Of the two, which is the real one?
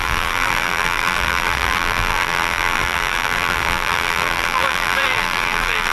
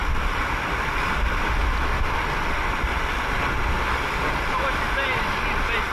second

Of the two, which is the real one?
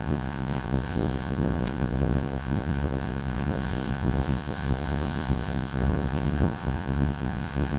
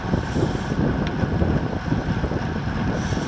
second